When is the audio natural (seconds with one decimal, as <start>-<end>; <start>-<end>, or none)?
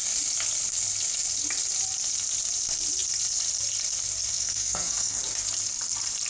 0.0-4.3; 5.2-6.3